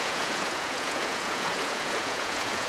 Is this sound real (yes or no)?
no